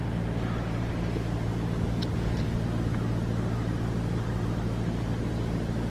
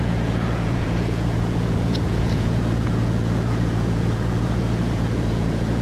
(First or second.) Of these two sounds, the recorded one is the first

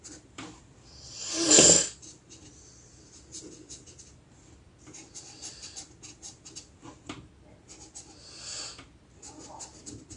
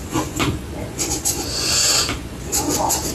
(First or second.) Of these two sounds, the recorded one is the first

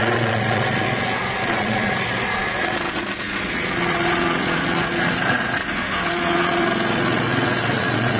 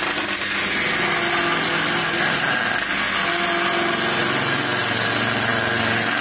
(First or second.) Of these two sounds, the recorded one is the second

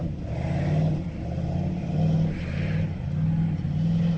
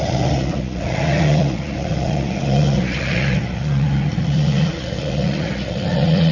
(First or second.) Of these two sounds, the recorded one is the first